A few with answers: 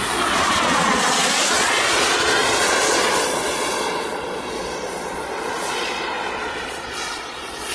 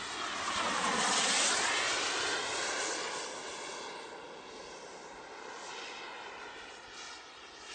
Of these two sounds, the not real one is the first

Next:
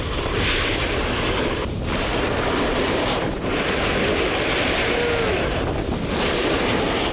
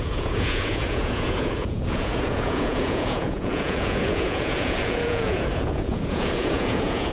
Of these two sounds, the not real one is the second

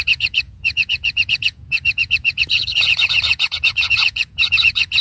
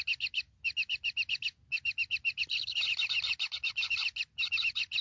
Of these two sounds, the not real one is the first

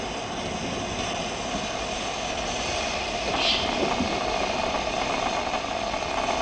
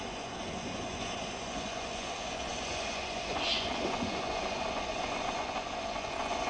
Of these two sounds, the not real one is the second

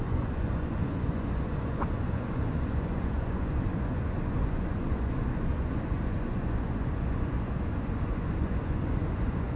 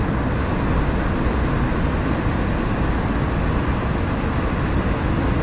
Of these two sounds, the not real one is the first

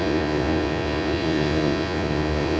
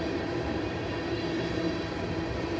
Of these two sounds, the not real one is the first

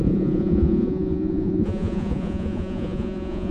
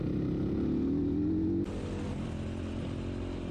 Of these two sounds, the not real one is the first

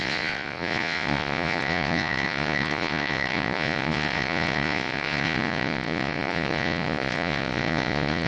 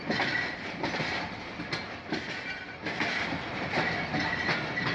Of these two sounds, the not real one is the first